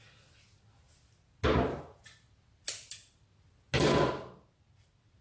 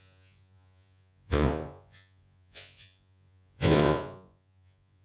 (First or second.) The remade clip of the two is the second